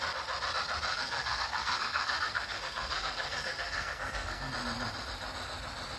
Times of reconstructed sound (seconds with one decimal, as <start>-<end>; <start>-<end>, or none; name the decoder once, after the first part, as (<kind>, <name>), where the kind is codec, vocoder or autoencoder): 0.9-4.5 (codec, SNAC)